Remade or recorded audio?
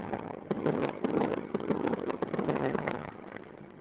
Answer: remade